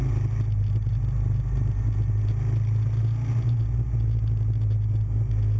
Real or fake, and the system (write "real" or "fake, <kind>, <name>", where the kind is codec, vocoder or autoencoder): real